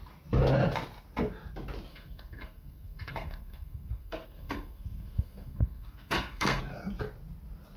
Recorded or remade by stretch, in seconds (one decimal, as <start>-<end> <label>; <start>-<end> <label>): 0.0-1.9 recorded; 1.9-6.6 remade; 6.6-7.8 recorded